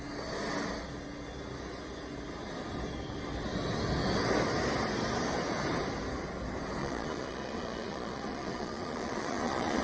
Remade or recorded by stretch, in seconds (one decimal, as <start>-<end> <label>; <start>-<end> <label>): 0.0-6.8 recorded; 6.8-9.8 remade